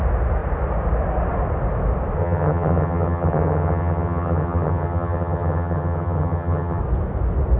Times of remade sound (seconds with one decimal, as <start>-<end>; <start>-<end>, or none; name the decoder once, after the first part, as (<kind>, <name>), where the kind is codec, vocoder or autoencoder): 2.2-6.8 (vocoder, HiFi-GAN)